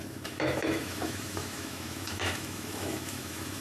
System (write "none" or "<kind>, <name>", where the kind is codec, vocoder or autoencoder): autoencoder, DAC-VAE